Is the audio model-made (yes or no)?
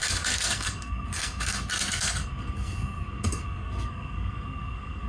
yes